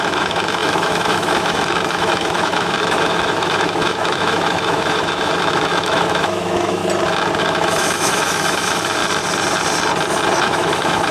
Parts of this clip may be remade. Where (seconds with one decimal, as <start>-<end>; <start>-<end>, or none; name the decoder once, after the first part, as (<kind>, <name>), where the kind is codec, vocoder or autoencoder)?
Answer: 0.0-6.8 (autoencoder, DAC-VAE); 7.4-9.0; 10.4-11.1

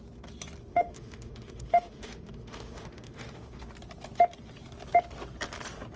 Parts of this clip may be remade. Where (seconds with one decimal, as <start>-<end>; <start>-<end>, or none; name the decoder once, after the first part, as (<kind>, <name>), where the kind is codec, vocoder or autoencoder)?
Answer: 0.7-3.6 (autoencoder, DAC-VAE)

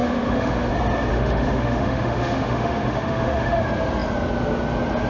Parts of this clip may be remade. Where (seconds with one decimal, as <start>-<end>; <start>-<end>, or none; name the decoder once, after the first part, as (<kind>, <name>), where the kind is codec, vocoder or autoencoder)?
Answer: 0.0-0.7 (autoencoder, DAC-VAE); 1.1-3.6

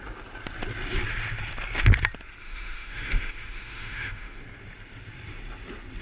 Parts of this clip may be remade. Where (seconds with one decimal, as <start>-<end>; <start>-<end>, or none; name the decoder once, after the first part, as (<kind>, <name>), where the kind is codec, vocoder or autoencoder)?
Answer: 2.4-4.4 (autoencoder, DAC-VAE)

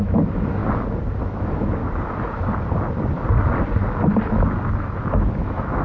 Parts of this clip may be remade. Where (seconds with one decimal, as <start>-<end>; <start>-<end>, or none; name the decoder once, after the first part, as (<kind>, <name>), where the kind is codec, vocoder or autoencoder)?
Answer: 0.0-0.6 (autoencoder, DAC-VAE); 1.2-1.8; 4.8-5.8

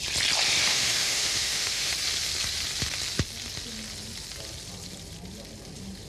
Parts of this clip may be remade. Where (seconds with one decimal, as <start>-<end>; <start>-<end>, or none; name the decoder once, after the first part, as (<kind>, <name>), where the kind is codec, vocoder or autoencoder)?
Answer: 0.7-1.9 (autoencoder, DAC-VAE)

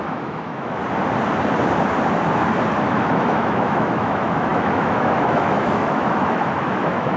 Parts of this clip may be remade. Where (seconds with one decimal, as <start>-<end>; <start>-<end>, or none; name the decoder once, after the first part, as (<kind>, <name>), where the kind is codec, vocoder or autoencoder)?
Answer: 0.0-0.8 (autoencoder, DAC-VAE); 2.9-7.2

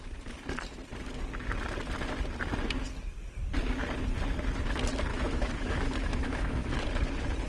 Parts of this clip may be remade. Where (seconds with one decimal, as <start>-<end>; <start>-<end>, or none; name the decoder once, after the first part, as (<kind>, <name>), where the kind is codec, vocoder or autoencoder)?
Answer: 5.1-6.7 (autoencoder, DAC-VAE)